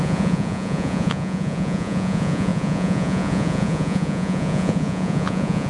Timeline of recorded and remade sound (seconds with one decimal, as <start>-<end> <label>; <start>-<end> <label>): 0.0-5.7 remade